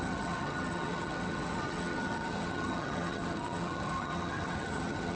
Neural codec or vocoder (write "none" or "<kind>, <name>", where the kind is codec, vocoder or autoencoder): vocoder, HiFi-GAN